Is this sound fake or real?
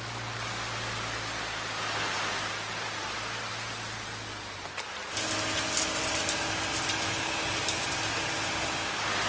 real